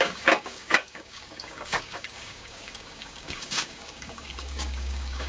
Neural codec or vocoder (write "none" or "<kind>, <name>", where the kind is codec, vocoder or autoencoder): codec, DAC